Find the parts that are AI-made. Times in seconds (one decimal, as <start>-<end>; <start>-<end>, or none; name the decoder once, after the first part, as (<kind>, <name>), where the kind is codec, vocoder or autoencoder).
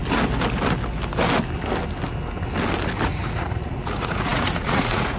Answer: 3.1-5.2 (vocoder, Vocos)